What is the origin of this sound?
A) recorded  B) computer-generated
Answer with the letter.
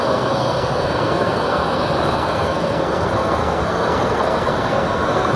B